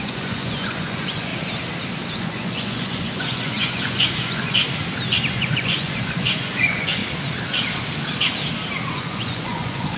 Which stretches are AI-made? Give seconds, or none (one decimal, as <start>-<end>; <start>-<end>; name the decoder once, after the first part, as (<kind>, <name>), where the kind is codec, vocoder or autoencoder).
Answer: 0.0-1.3 (vocoder, Vocos); 2.1-4.6; 5.3-7.0; 8.9-10.0